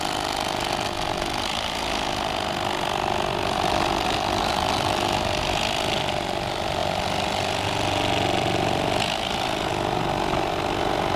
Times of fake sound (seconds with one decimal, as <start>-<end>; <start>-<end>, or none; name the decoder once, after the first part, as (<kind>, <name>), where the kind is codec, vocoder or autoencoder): none

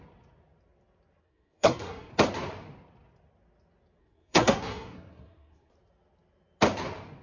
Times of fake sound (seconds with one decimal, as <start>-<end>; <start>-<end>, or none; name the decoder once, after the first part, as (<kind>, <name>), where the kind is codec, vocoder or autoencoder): 1.2-2.1 (codec, SNAC); 4.0-5.7

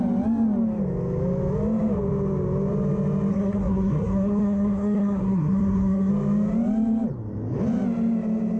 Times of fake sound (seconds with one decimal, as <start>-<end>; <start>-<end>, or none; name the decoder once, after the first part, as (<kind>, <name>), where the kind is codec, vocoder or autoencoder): 3.3-6.1 (codec, SNAC)

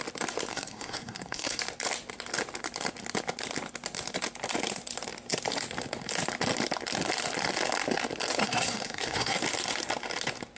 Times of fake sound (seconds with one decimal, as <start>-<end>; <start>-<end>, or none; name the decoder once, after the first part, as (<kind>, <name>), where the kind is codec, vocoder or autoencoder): 0.5-1.6 (codec, SNAC); 8.4-9.4